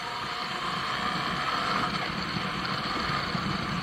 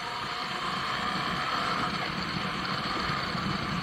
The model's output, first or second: second